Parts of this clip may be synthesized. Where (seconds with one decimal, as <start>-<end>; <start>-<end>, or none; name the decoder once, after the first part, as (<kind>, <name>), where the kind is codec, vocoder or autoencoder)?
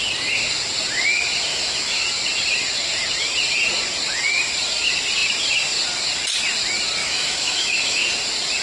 1.5-2.1 (autoencoder, DAC-VAE); 7.0-8.0